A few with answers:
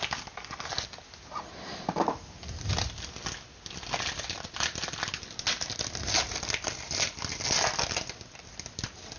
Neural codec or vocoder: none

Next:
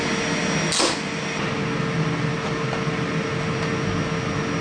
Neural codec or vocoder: none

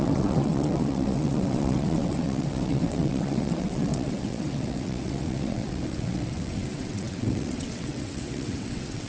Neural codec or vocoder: vocoder, WaveNeXt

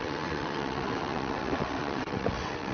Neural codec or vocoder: vocoder, WaveNeXt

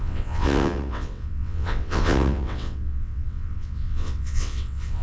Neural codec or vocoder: vocoder, WaveNeXt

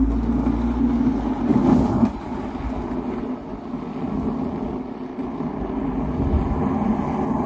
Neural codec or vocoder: none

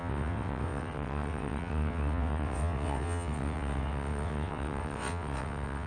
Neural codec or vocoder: vocoder, WaveNeXt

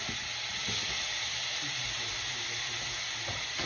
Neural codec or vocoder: none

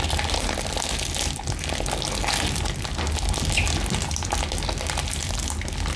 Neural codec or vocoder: none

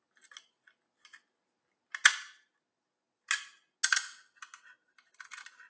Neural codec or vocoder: none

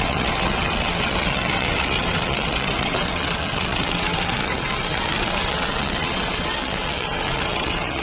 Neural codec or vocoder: vocoder, WaveNeXt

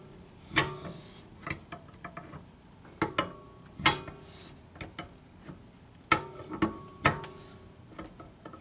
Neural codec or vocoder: none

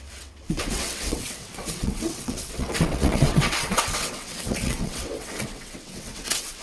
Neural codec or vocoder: vocoder, WaveNeXt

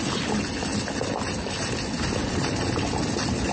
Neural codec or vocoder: none